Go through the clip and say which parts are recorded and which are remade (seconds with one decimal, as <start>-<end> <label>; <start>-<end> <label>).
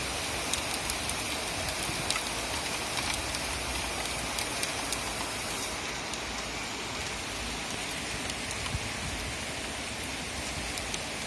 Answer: 0.0-11.3 recorded